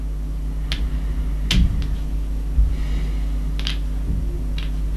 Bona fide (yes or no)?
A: yes